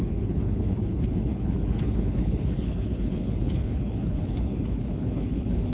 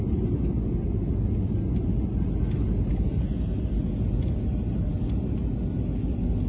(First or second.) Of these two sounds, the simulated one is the first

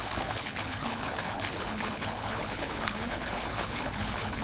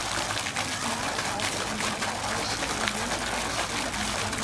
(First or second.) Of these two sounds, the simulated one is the first